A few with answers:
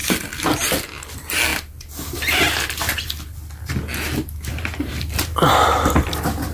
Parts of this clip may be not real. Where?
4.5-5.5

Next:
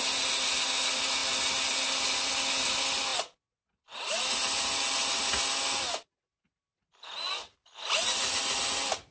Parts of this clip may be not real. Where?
none

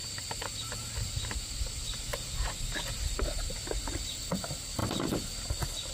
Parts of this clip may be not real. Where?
0.0-0.5; 2.1-3.2; 4.8-5.4

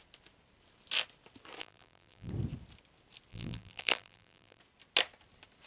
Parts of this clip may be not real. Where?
1.6-2.3; 3.3-4.6